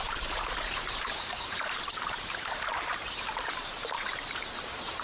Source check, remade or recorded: remade